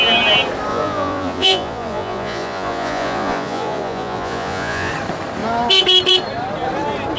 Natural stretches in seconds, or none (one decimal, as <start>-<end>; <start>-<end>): 0.0-0.7; 4.9-7.2